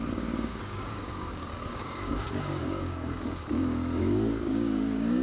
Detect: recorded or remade remade